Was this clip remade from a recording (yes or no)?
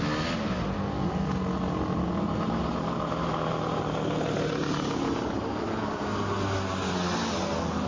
no